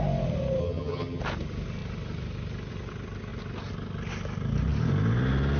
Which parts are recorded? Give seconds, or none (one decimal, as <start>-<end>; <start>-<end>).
0.0-0.6; 1.2-5.6